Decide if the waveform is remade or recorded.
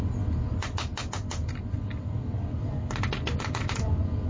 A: recorded